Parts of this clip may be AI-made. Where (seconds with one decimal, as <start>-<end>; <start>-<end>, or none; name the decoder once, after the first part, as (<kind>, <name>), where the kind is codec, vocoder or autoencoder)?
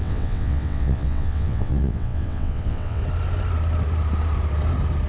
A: 0.0-3.0 (vocoder, WaveNeXt)